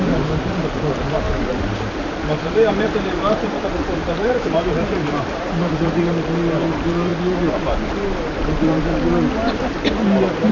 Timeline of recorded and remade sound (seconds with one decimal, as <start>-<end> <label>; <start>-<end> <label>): 0.0-7.1 remade; 7.1-8.2 recorded; 8.2-8.9 remade; 8.9-10.5 recorded